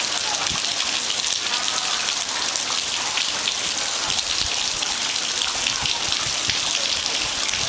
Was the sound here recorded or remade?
recorded